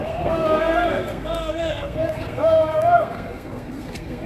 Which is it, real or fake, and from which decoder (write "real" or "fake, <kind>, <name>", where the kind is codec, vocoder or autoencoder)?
fake, codec, SNAC